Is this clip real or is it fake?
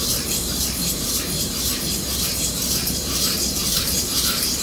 fake